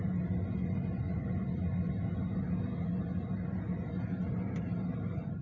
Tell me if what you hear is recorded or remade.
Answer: recorded